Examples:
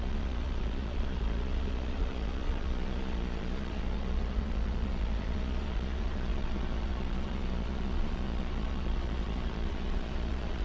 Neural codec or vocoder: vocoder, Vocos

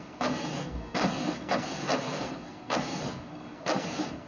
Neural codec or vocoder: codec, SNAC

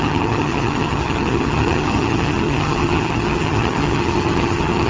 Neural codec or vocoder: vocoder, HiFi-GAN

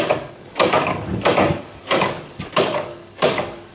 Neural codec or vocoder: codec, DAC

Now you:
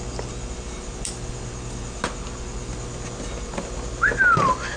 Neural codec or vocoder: none